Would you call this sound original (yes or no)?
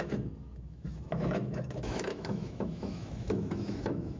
no